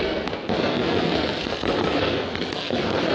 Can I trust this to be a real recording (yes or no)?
no